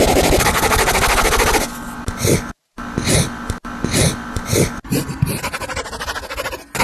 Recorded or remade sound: recorded